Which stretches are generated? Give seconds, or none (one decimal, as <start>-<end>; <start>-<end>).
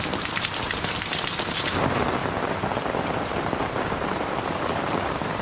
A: 0.0-2.2; 2.8-5.4